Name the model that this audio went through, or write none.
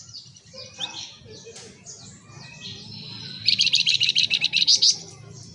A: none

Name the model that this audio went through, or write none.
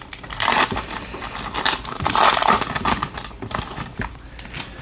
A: none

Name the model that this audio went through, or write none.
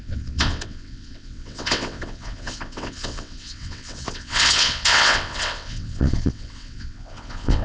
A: vocoder, WaveNeXt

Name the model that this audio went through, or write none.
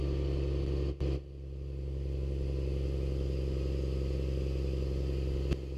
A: none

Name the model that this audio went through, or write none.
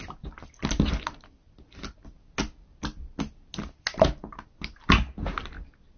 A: none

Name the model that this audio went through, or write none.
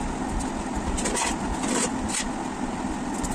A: none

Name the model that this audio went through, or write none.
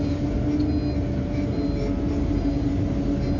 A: none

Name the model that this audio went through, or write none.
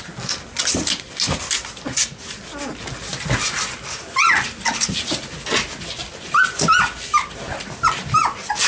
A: none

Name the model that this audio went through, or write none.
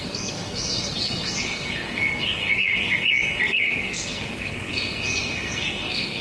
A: codec, SNAC